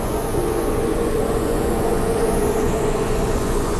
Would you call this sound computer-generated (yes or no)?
yes